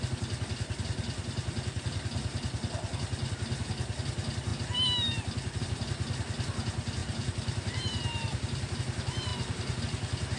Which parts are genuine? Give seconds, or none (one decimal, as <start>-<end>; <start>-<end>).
0.0-7.0; 8.8-9.3; 9.8-10.4